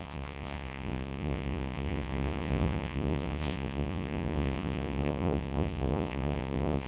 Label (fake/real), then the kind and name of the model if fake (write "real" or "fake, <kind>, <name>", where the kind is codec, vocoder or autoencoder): fake, vocoder, Vocos